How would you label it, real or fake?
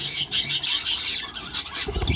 real